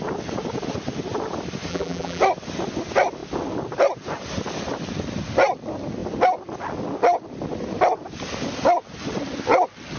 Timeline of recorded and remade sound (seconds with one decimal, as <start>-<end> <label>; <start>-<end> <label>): 0.0-1.7 recorded; 1.7-2.2 remade; 2.2-10.0 recorded